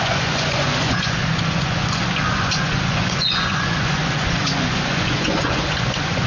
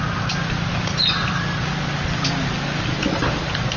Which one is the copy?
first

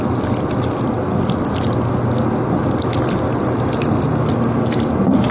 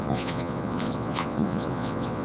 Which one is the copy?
second